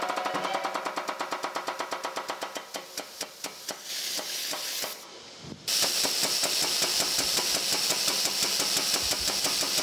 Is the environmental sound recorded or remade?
recorded